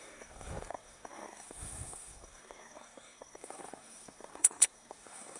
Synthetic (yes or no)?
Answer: yes